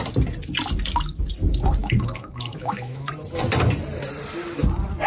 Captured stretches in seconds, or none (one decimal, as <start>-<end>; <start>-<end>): 0.0-1.8; 3.1-5.1